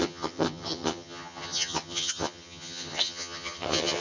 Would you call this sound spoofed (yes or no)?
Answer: yes